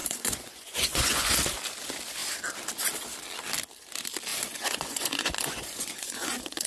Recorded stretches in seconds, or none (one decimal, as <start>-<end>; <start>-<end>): 1.3-4.3